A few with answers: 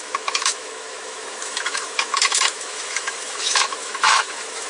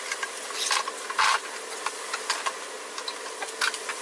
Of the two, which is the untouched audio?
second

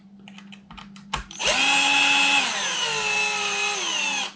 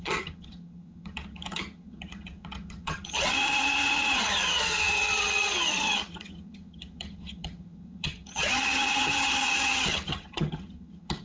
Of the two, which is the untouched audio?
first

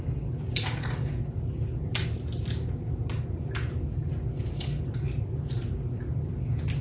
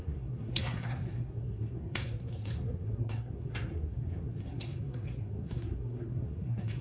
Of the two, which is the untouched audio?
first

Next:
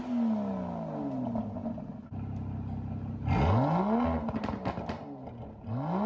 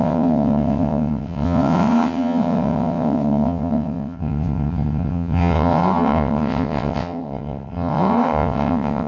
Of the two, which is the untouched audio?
first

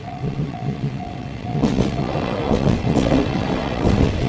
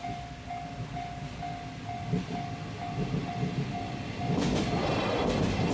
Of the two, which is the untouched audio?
second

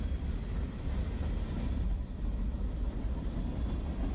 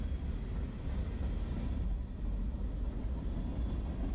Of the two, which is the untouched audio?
second